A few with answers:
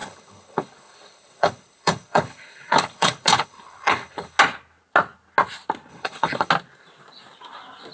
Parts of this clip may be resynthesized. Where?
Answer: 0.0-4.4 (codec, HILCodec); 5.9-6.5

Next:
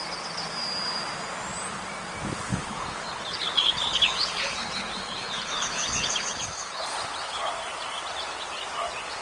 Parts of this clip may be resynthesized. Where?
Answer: 2.5-7.5 (codec, HILCodec)